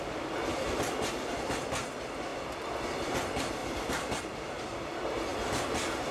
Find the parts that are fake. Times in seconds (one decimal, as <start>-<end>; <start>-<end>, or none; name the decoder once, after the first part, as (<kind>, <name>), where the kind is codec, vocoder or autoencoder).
0.5-1.3 (vocoder, BigVGAN v2); 2.3-3.0; 3.6-4.2; 5.3-6.1